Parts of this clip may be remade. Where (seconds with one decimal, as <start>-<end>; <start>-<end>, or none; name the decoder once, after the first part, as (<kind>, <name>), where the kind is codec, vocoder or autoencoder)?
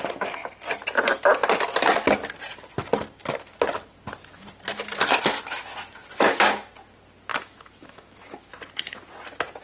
7.3-8.5 (autoencoder, DAC-VAE)